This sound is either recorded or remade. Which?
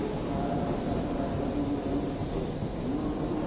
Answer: recorded